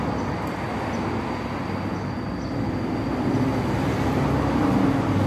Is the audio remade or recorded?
recorded